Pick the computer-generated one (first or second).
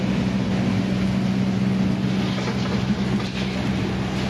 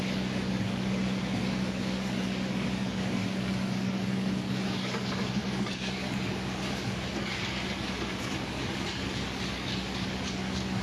second